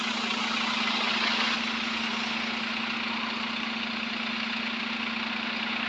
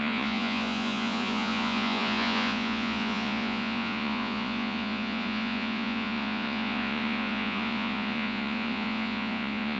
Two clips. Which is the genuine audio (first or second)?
first